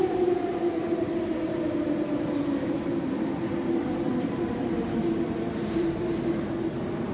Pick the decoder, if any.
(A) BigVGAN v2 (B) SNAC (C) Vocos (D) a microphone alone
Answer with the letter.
A